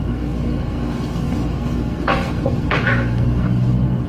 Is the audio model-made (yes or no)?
yes